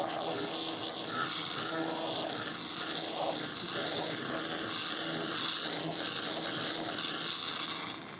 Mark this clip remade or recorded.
recorded